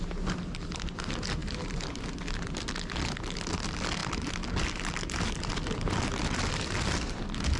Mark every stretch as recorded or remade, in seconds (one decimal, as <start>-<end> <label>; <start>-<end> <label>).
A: 0.0-1.4 recorded; 1.4-2.7 remade; 2.7-4.0 recorded; 4.0-5.5 remade; 5.5-7.6 recorded